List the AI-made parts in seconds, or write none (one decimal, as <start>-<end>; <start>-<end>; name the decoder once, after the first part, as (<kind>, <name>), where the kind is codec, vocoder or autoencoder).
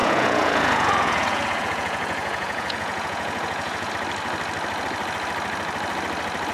0.0-3.9 (vocoder, Vocos)